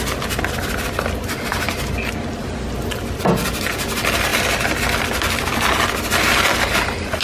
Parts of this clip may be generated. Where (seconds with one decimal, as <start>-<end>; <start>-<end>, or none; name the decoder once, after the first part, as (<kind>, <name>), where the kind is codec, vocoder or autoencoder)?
none